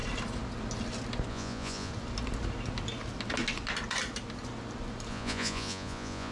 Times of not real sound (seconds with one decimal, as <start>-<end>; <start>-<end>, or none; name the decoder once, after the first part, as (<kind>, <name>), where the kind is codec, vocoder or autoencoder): 1.3-1.9 (vocoder, Vocos); 5.1-6.3